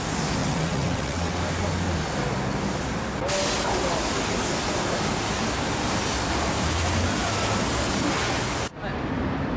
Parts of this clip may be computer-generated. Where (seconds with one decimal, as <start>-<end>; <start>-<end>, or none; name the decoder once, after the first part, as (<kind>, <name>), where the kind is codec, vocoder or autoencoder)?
0.4-1.4 (vocoder, WaveNeXt)